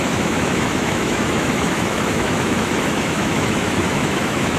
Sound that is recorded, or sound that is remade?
remade